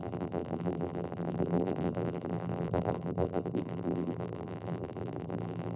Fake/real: fake